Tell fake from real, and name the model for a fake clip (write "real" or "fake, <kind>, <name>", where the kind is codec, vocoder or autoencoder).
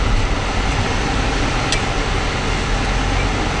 real